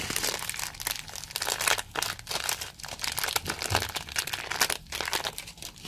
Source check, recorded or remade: recorded